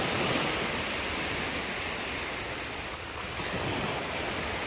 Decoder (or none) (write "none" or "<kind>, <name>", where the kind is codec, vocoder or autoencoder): none